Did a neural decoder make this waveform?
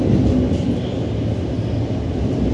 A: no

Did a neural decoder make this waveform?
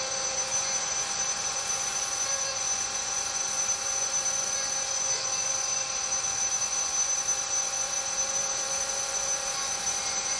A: yes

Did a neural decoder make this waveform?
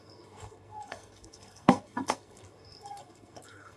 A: yes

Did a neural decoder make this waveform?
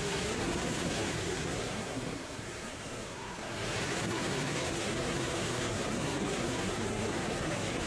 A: yes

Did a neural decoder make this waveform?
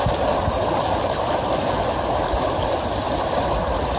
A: no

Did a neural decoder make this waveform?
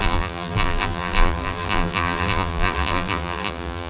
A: yes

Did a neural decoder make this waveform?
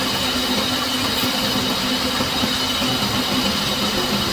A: no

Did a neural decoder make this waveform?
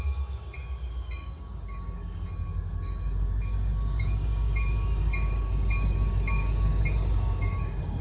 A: yes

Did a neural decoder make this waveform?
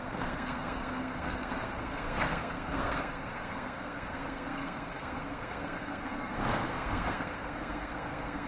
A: yes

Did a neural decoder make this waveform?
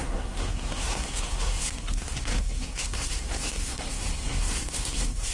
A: yes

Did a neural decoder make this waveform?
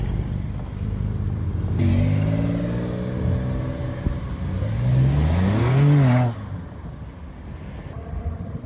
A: no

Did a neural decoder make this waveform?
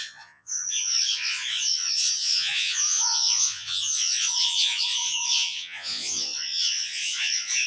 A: yes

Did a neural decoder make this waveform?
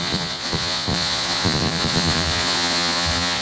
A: yes